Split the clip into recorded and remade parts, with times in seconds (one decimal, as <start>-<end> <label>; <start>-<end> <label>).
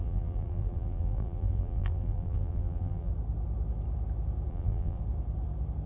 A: 0.0-3.1 remade; 3.1-4.5 recorded; 4.5-5.0 remade; 5.0-5.9 recorded